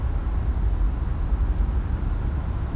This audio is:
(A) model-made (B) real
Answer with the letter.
B